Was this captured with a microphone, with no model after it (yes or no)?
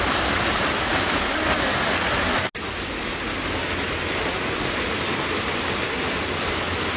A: yes